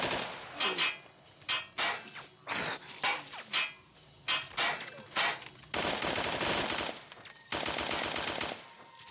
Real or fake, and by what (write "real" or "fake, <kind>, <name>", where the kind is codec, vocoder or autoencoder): real